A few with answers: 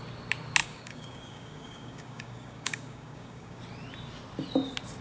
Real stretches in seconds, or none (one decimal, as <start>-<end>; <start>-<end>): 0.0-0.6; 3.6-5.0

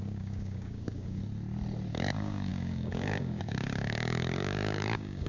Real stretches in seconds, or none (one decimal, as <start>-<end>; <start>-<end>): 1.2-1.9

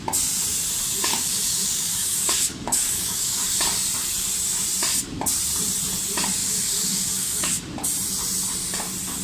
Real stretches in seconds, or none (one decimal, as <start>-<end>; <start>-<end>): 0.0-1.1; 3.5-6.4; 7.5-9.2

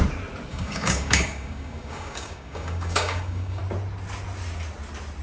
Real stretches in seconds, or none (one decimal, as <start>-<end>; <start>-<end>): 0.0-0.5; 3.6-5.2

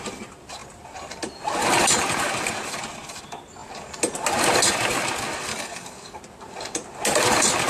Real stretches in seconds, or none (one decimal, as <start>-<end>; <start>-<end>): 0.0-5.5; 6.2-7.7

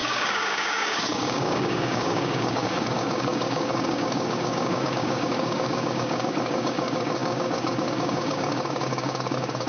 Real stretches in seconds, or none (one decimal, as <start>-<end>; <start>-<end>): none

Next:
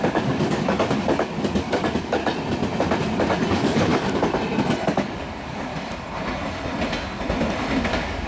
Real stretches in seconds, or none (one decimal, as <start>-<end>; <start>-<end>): 2.2-3.5; 3.9-4.9; 5.7-7.9